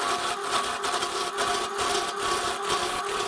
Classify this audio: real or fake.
real